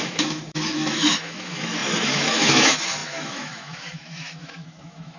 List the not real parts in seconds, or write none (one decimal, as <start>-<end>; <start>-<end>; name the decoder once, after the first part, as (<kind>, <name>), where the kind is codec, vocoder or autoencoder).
0.0-5.2 (autoencoder, DAC-VAE)